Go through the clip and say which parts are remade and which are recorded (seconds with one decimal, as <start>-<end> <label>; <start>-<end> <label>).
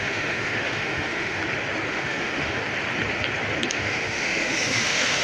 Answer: 0.0-1.4 remade; 1.4-1.9 recorded; 1.9-2.6 remade; 2.6-3.7 recorded; 3.7-5.2 remade